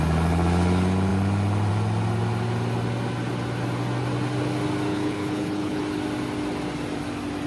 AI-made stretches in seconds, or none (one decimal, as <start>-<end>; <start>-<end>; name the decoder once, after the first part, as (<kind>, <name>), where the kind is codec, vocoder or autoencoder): 4.9-5.8 (codec, HILCodec)